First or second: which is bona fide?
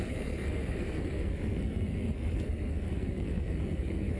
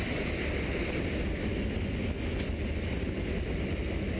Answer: second